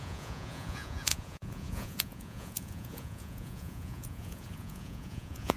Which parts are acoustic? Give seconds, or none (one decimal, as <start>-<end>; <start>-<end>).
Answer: none